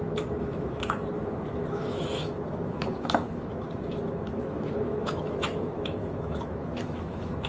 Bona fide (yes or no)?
no